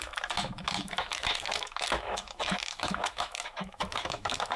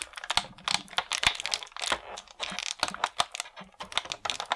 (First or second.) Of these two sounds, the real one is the second